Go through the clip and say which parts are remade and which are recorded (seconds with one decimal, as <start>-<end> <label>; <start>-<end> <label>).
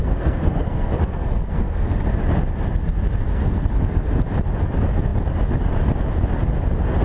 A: 0.0-2.1 remade; 2.1-3.2 recorded; 3.2-4.2 remade; 4.2-7.0 recorded